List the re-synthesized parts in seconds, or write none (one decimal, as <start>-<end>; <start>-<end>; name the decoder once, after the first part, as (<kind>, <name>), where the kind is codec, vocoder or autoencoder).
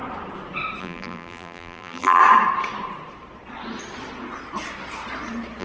0.8-2.2 (vocoder, BigVGAN v2)